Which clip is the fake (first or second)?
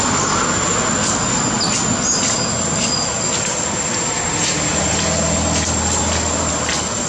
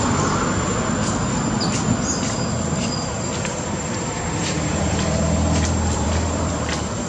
second